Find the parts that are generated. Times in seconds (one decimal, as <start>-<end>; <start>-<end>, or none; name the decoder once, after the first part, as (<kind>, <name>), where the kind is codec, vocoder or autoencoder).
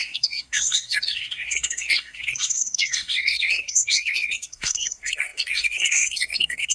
0.0-6.7 (codec, SNAC)